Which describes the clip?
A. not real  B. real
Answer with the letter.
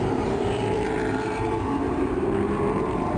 A